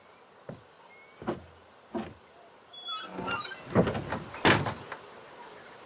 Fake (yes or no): no